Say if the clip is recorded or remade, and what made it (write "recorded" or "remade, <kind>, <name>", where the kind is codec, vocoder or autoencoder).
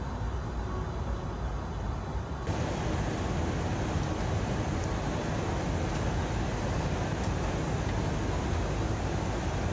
recorded